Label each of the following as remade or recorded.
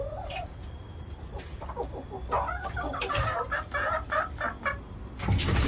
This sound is recorded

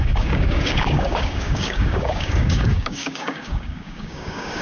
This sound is remade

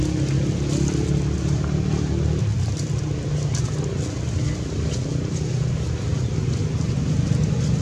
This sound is recorded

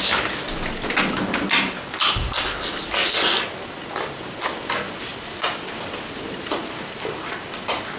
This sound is recorded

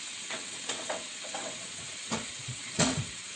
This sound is remade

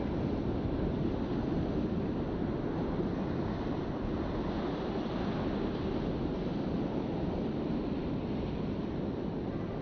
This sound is recorded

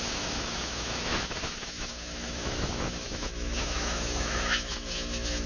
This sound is remade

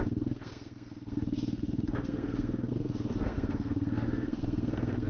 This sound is remade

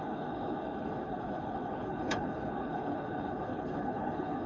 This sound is remade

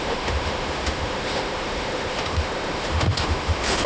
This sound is remade